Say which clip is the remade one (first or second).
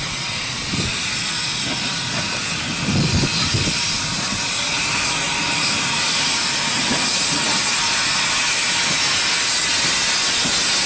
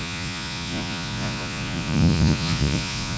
second